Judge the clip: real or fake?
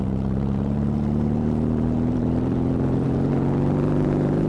fake